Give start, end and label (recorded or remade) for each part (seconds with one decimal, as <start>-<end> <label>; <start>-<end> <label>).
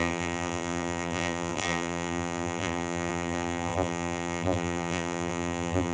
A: 0.0-5.9 remade